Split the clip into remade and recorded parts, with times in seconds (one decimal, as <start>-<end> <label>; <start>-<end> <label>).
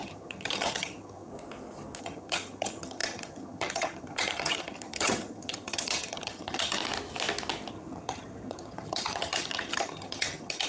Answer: 0.0-1.3 remade; 1.3-2.0 recorded; 2.0-6.8 remade; 6.8-7.7 recorded; 7.7-10.7 remade